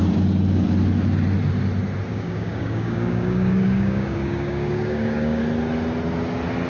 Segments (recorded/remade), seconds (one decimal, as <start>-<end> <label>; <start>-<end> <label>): 0.0-2.1 recorded; 2.1-5.4 remade; 5.4-6.7 recorded